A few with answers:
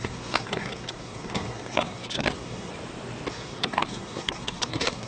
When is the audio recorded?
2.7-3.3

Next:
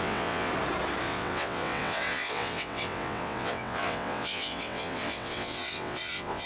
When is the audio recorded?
0.5-1.0

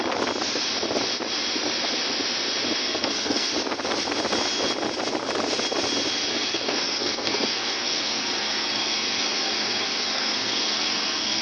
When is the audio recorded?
0.0-2.8; 3.5-6.3

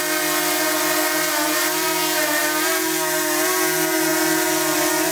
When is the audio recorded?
0.0-5.1

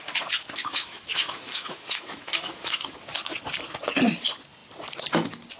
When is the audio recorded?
0.0-0.6; 2.9-5.6

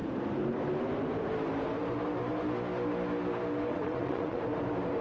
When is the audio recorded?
0.0-3.7; 4.4-5.0